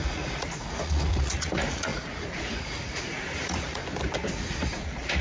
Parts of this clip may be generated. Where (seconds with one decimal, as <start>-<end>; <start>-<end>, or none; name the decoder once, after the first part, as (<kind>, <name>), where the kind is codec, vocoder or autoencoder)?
0.0-3.8 (vocoder, Vocos); 4.3-5.2